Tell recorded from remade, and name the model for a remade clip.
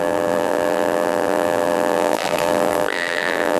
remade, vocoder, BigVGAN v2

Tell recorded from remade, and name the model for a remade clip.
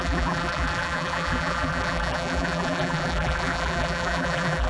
remade, vocoder, BigVGAN v2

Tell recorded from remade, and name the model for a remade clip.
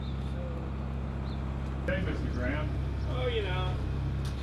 recorded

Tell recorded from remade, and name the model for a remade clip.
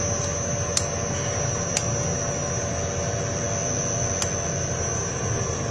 recorded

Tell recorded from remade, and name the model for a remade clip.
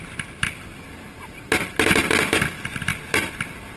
recorded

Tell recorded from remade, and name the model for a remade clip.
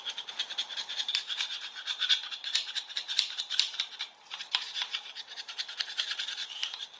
remade, vocoder, BigVGAN v2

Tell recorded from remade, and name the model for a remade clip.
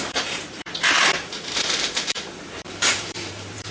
remade, vocoder, BigVGAN v2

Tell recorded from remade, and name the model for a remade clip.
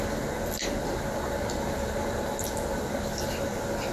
remade, vocoder, BigVGAN v2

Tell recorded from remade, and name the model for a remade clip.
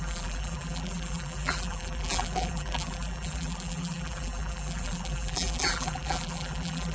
remade, vocoder, BigVGAN v2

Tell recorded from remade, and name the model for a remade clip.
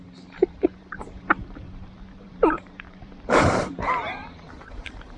remade, vocoder, BigVGAN v2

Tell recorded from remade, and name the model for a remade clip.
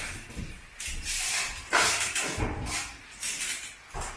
recorded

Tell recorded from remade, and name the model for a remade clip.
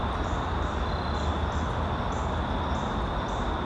recorded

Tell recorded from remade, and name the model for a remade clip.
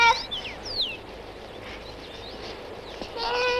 recorded